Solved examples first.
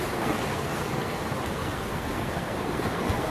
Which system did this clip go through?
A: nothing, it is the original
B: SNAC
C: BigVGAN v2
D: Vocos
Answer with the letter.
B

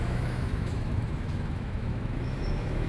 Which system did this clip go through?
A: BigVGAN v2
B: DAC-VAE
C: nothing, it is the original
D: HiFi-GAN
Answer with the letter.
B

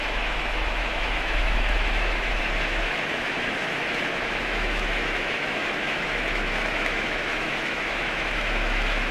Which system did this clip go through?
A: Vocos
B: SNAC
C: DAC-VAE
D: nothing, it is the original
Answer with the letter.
C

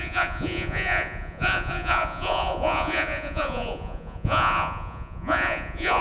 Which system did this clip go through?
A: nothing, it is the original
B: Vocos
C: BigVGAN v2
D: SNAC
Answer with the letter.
B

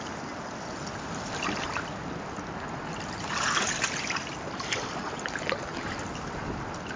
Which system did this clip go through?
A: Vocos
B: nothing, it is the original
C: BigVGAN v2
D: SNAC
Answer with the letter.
B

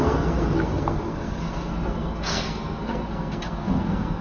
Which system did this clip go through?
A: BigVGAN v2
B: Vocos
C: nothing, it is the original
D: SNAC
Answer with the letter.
D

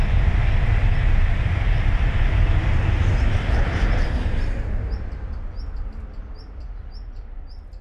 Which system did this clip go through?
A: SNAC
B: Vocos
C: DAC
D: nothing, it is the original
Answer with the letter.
D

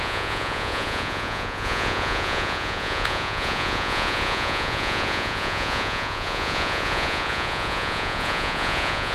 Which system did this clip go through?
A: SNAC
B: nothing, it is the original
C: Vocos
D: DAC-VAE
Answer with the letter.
C